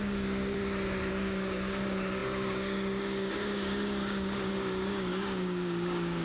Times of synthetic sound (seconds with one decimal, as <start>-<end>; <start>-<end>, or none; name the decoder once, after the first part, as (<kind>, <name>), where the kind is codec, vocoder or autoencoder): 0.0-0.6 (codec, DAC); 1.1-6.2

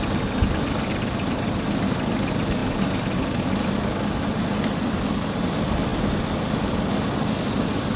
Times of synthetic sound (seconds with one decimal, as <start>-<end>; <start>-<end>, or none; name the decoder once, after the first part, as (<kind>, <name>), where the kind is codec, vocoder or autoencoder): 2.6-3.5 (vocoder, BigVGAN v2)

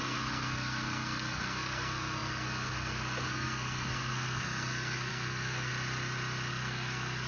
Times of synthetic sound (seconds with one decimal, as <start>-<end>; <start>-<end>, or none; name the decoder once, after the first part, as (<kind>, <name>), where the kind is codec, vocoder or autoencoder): 0.0-5.7 (codec, SNAC); 6.5-7.3

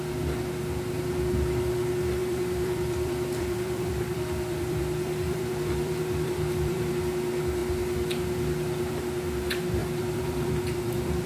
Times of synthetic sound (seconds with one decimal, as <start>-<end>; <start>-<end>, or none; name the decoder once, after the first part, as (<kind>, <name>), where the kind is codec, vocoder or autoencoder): 2.2-6.9 (vocoder, BigVGAN v2); 9.8-11.3

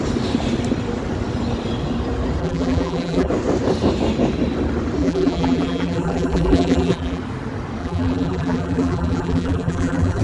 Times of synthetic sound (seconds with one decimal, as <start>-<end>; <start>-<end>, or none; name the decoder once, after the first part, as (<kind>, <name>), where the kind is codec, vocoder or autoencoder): 2.4-3.3 (vocoder, BigVGAN v2); 5.0-7.2; 7.8-10.2

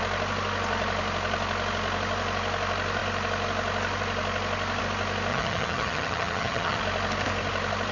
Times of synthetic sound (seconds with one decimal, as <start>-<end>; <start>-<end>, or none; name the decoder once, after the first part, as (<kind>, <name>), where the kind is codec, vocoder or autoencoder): 5.3-6.8 (vocoder, HiFi-GAN)

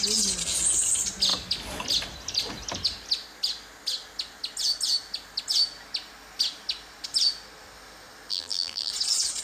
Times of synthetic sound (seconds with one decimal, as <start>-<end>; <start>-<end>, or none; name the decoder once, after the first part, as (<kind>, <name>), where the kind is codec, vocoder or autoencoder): 8.3-8.9 (vocoder, BigVGAN v2)